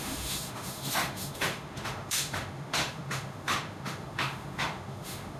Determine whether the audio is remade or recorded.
remade